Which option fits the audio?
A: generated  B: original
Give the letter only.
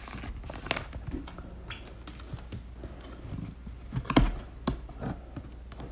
B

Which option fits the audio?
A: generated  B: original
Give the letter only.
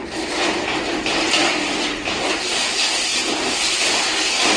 B